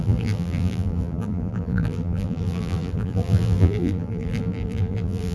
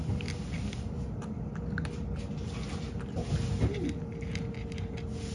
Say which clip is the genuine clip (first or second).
second